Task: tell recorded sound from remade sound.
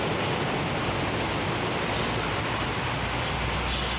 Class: recorded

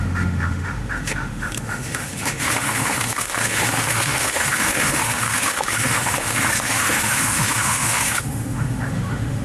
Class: remade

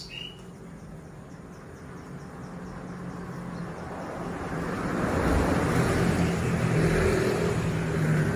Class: recorded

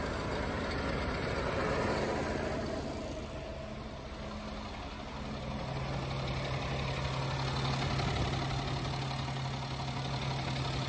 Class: recorded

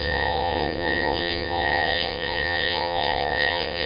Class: remade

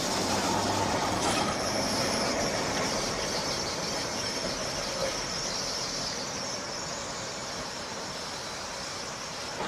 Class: remade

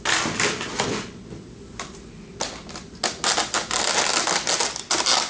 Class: recorded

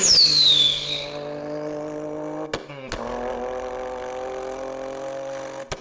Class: recorded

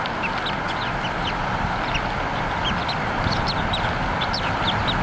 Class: recorded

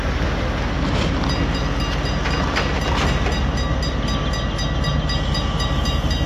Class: recorded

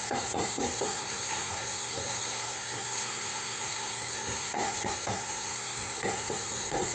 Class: remade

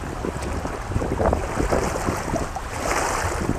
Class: recorded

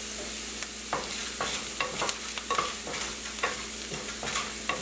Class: recorded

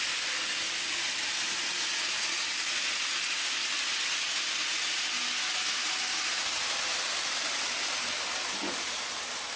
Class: recorded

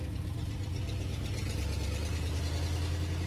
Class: recorded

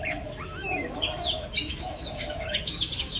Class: remade